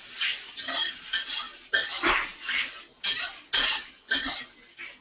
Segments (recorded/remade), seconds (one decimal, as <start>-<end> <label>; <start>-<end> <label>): 0.0-5.0 recorded